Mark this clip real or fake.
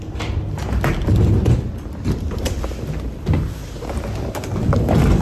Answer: real